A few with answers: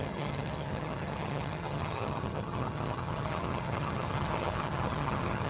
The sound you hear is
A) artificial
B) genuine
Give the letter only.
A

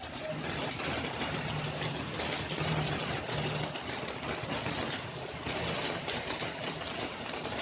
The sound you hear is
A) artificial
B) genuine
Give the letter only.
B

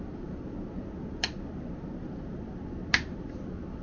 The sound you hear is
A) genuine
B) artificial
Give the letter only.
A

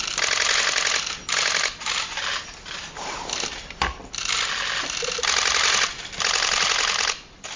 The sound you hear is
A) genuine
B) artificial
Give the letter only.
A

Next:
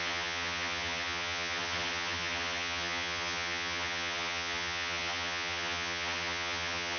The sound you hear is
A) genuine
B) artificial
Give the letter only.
B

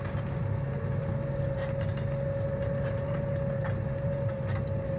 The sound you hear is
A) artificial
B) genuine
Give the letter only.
B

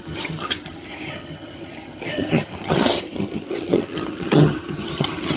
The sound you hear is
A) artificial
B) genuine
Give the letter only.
A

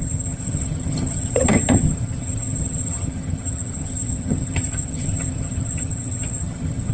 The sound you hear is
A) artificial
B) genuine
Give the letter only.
A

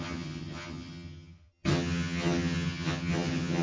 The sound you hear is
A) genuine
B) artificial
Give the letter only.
B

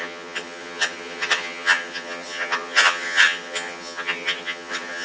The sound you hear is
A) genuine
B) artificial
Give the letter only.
B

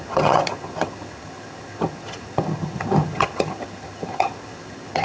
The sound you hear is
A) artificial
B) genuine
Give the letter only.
A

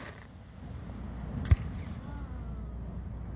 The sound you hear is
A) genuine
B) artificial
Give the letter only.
A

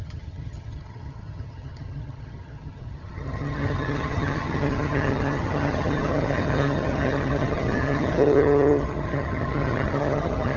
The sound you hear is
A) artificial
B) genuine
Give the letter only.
A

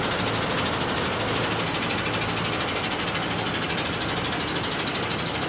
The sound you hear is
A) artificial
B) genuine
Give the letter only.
B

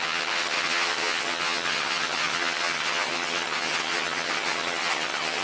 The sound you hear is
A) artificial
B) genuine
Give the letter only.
A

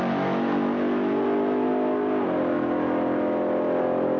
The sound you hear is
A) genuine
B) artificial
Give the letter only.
A